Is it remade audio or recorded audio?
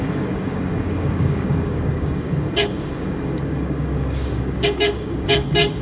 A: remade